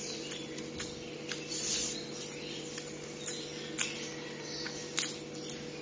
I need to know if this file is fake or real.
real